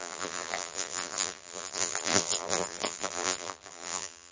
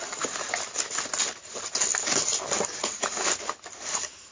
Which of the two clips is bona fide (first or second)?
second